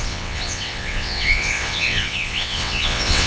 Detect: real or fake fake